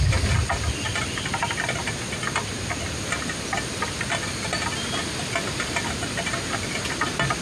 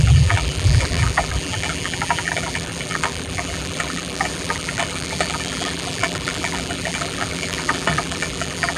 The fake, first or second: second